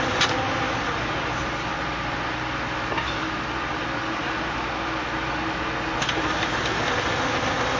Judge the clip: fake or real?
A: real